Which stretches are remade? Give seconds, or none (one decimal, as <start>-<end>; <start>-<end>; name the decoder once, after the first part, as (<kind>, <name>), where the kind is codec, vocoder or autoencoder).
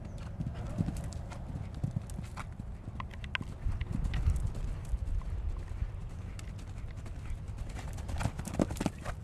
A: none